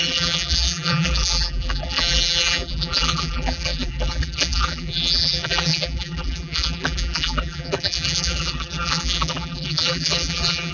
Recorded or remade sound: remade